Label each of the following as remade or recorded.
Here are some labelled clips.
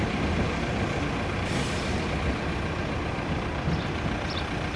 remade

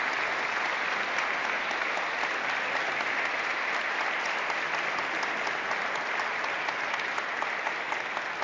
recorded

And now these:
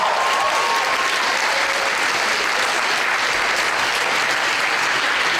recorded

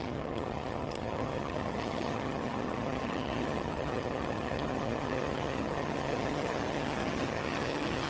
remade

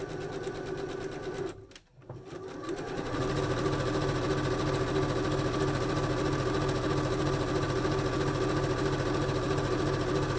recorded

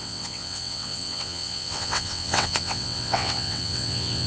remade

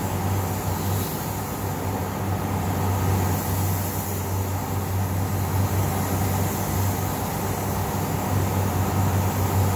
recorded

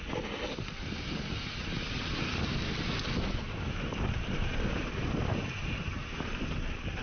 recorded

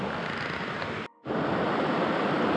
recorded